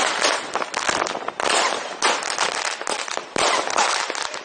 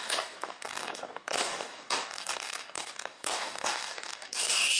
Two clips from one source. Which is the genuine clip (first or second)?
first